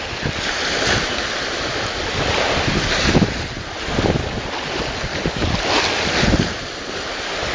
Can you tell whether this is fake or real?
real